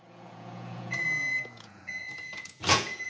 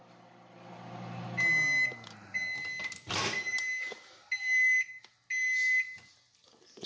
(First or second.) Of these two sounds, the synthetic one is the first